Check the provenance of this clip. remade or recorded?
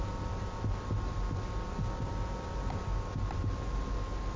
recorded